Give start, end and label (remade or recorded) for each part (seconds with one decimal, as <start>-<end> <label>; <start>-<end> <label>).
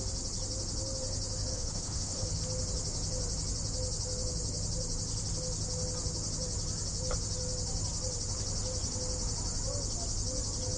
0.0-1.5 recorded; 1.5-2.4 remade; 2.4-10.8 recorded